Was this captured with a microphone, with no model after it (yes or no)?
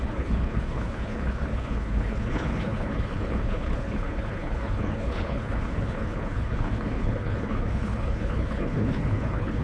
no